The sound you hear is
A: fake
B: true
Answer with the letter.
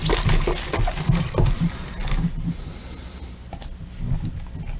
B